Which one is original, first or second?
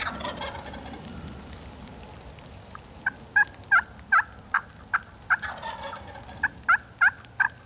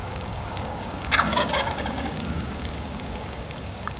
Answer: first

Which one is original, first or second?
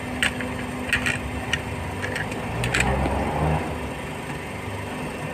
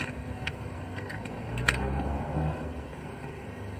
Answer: first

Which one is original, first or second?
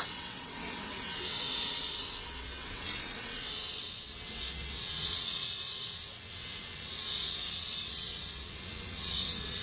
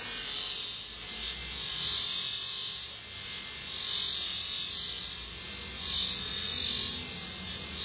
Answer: second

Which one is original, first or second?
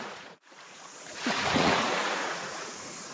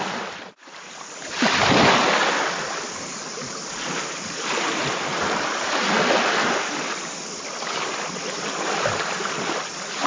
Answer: second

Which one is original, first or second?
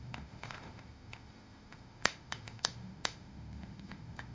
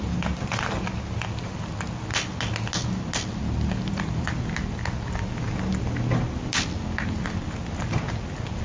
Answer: second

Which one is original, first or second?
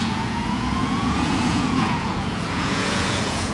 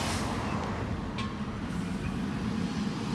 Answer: second